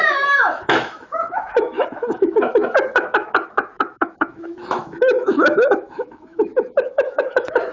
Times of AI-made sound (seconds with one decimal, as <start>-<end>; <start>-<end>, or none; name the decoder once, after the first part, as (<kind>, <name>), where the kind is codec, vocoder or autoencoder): 0.0-7.7 (autoencoder, DAC-VAE)